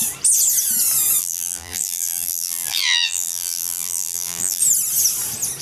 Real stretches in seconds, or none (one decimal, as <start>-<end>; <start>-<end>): 0.0-1.2; 4.6-5.6